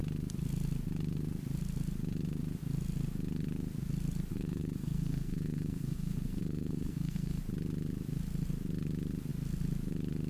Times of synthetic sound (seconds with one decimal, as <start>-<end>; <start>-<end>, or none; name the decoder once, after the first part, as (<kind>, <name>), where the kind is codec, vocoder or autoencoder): 4.3-7.4 (codec, SNAC)